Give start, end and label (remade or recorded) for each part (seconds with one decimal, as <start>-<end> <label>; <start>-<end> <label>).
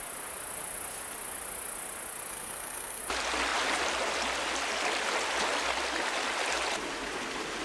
0.0-2.3 recorded; 2.3-3.0 remade; 3.0-7.6 recorded